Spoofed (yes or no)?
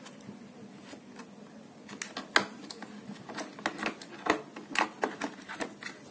no